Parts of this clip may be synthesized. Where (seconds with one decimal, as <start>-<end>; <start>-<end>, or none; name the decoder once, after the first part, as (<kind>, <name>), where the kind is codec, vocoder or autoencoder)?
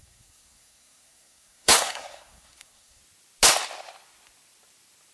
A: 0.0-3.0 (codec, SNAC)